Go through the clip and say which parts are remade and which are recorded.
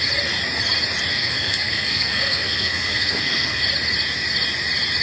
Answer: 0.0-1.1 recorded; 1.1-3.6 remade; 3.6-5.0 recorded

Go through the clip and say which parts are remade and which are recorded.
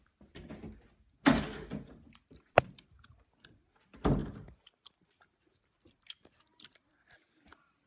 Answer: 0.0-4.2 recorded; 4.2-7.3 remade; 7.3-7.9 recorded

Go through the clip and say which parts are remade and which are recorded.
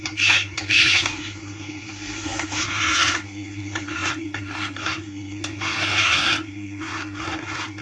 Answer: 0.0-7.8 remade